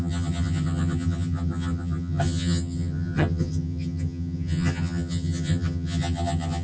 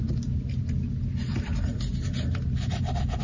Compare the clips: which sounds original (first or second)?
second